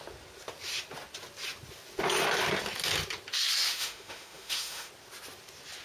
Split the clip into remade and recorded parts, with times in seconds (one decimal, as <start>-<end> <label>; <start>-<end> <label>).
0.0-3.7 recorded; 3.7-4.9 remade; 4.9-5.8 recorded